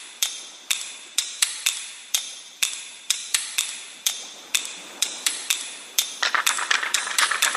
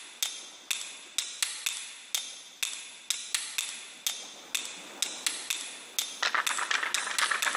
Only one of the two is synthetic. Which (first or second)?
first